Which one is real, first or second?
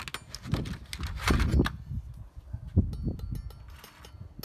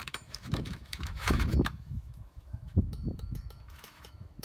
first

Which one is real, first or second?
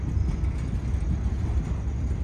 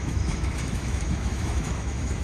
first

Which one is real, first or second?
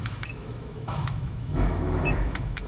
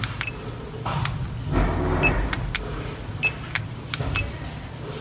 second